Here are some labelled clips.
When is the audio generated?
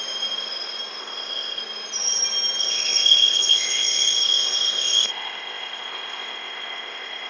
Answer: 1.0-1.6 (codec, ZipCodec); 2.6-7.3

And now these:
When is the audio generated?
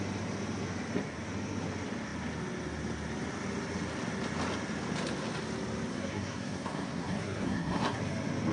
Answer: 5.9-8.0 (codec, SNAC)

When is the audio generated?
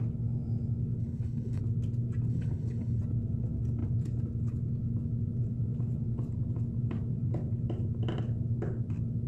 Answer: 1.0-1.6 (codec, HILCodec); 2.3-3.0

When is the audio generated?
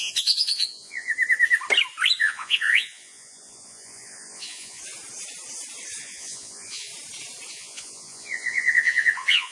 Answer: 0.0-1.1 (vocoder, Vocos); 2.2-4.8; 6.0-6.9; 7.5-9.5